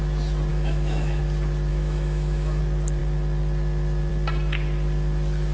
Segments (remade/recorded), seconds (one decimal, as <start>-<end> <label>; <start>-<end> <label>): 0.0-0.5 recorded; 0.5-1.2 remade; 1.2-1.7 recorded; 1.7-2.6 remade; 2.6-5.5 recorded